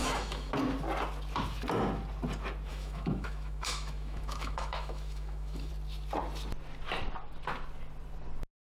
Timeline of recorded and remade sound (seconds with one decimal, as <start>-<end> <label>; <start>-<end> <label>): 0.0-0.5 remade; 0.5-2.7 recorded; 2.7-5.7 remade; 5.7-8.7 recorded

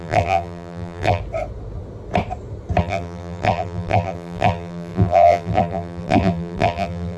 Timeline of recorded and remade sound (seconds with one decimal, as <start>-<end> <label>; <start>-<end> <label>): 0.0-1.2 remade; 1.2-2.8 recorded; 2.8-7.2 remade

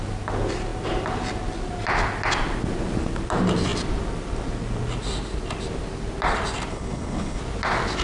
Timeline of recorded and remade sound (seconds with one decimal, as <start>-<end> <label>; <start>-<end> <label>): 0.0-6.7 recorded; 6.7-7.4 remade; 7.4-8.0 recorded

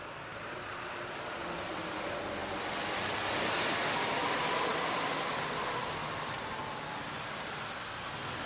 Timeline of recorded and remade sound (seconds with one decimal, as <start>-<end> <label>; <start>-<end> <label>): 0.0-8.5 recorded